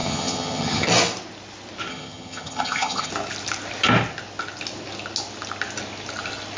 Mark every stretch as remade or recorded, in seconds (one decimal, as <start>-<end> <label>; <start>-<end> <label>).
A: 0.0-0.9 remade; 0.9-1.9 recorded; 1.9-3.1 remade; 3.1-6.6 recorded

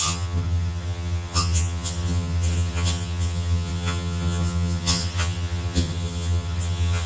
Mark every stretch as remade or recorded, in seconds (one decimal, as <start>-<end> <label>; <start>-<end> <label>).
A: 0.0-7.1 remade

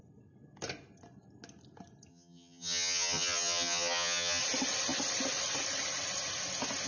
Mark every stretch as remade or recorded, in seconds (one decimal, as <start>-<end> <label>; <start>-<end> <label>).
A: 0.0-2.1 recorded; 2.1-4.4 remade; 4.4-6.9 recorded

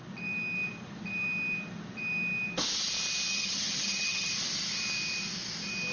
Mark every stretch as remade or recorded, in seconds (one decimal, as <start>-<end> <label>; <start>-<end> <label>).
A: 0.0-3.3 recorded; 3.3-4.3 remade; 4.3-5.9 recorded

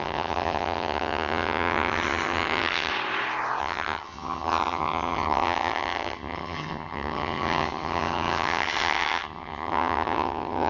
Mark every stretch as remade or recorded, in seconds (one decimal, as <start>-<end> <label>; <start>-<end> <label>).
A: 0.0-2.9 remade; 2.9-3.6 recorded; 3.6-10.7 remade

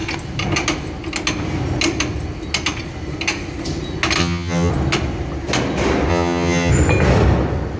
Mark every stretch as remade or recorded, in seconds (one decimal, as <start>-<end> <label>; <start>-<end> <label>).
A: 0.0-4.2 recorded; 4.2-4.7 remade; 4.7-6.1 recorded; 6.1-6.7 remade; 6.7-7.8 recorded

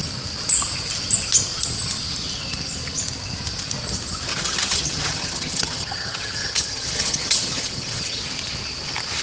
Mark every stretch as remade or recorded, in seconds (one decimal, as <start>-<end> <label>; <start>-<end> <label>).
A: 0.0-4.3 recorded; 4.3-8.2 remade; 8.2-9.2 recorded

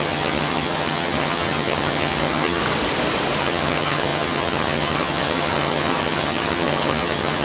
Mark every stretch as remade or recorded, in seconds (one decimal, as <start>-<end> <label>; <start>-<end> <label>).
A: 0.0-2.6 remade; 2.6-3.4 recorded; 3.4-7.4 remade